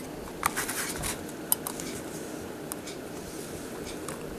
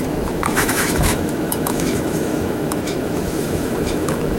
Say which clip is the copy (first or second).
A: second